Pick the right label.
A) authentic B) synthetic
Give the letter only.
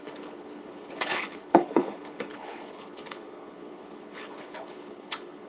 B